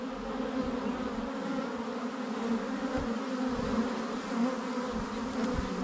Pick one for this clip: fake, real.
real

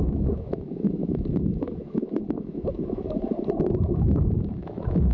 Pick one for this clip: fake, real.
fake